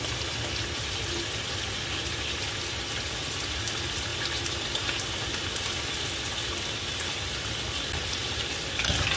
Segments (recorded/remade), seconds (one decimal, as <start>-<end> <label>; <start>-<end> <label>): 0.0-9.2 recorded